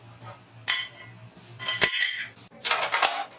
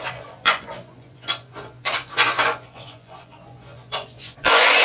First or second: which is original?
first